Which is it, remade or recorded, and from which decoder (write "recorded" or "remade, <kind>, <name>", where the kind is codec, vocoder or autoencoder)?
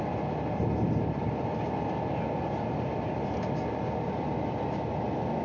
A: recorded